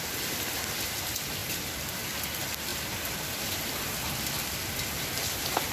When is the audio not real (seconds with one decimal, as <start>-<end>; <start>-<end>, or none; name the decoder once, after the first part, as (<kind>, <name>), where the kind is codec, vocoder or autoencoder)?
none